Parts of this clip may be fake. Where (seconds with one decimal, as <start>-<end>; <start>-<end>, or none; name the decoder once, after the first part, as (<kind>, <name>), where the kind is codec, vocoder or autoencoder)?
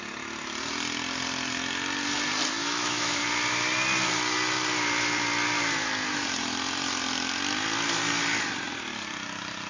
2.6-3.2 (autoencoder, DAC-VAE)